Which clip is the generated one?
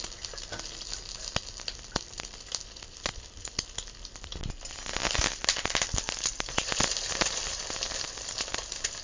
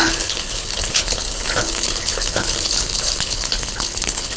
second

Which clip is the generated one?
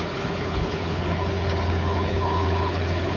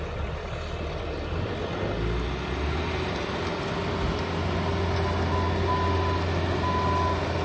first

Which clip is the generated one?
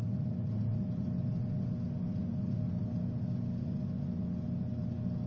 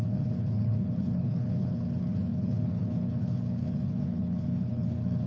second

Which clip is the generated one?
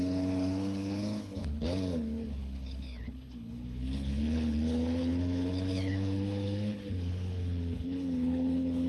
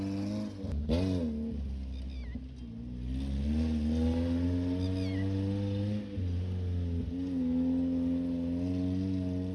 first